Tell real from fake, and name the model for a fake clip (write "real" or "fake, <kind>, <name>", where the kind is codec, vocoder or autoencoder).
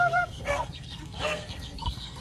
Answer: fake, codec, SNAC